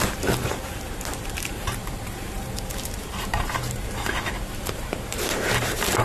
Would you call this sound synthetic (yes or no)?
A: yes